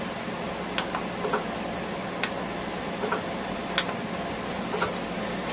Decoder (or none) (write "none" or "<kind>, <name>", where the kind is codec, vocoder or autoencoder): none